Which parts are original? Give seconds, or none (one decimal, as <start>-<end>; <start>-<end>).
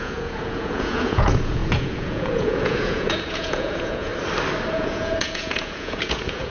4.1-4.7